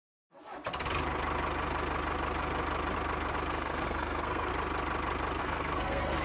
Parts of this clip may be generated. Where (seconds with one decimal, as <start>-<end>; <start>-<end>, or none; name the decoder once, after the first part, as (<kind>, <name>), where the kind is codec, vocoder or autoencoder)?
0.0-0.5 (codec, SNAC); 3.5-4.5; 5.4-6.2